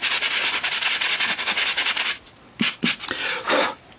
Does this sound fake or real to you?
real